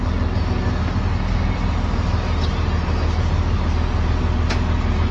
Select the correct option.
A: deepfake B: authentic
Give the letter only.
B